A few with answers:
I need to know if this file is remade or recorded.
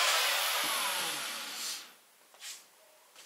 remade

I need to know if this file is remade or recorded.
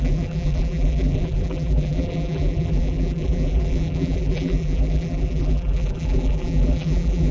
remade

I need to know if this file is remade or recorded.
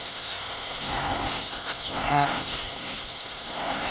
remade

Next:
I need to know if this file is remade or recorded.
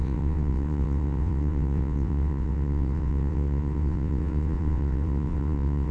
remade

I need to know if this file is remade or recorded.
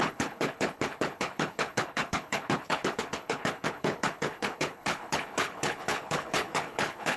remade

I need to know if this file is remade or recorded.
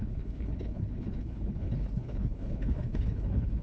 remade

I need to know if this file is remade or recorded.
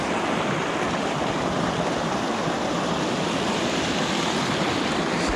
recorded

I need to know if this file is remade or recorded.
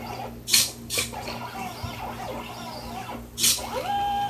remade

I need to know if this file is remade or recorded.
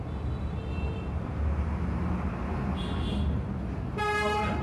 recorded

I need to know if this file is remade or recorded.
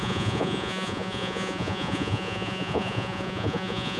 remade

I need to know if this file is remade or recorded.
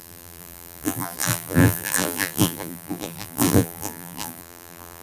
remade